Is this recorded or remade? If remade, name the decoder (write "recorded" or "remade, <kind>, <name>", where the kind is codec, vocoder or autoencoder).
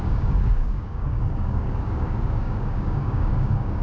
remade, codec, DAC